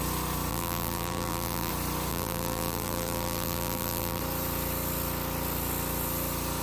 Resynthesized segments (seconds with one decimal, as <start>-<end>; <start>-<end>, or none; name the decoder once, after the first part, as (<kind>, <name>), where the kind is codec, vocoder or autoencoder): 0.5-1.7 (vocoder, BigVGAN v2); 2.1-4.2